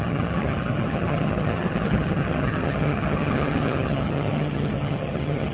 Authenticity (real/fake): fake